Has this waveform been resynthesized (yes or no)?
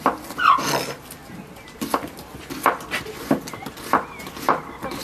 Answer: no